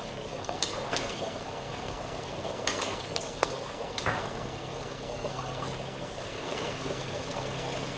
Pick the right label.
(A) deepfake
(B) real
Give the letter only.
A